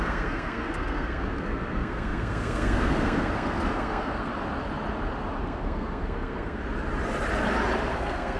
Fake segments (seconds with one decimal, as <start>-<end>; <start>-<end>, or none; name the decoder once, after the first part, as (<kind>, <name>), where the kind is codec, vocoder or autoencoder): 0.0-4.3 (codec, SNAC); 5.4-6.6; 7.9-8.4